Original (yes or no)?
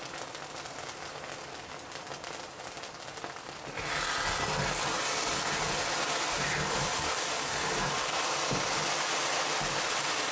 yes